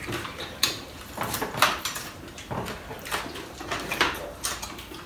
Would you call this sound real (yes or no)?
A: no